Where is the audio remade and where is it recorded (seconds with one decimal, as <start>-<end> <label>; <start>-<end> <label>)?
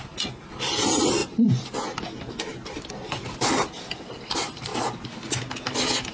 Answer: 0.0-1.2 remade; 1.2-2.9 recorded; 2.9-4.7 remade; 4.7-6.1 recorded